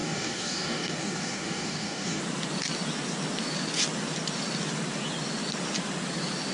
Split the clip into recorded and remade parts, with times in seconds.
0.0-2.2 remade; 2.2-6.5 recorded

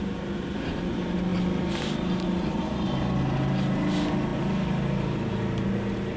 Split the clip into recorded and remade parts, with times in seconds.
0.0-6.2 recorded

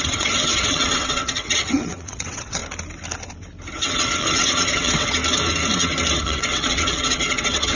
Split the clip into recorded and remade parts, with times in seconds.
0.0-2.6 remade; 2.6-3.7 recorded; 3.7-5.2 remade; 5.2-6.2 recorded; 6.2-7.7 remade

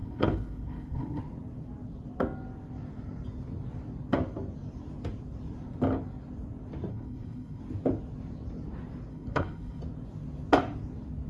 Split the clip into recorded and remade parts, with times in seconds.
0.0-1.2 remade; 1.2-6.9 recorded; 6.9-7.6 remade; 7.6-9.1 recorded; 9.1-9.8 remade; 9.8-11.3 recorded

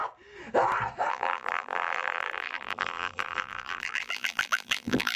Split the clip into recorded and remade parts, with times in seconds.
0.0-1.1 recorded; 1.1-5.2 remade